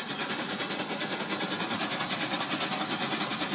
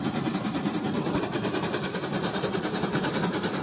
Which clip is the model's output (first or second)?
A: second